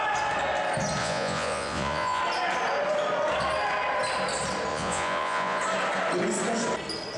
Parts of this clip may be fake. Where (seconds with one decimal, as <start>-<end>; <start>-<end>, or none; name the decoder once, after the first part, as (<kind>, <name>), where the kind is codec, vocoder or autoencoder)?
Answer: 1.0-2.2 (vocoder, Vocos); 4.7-5.6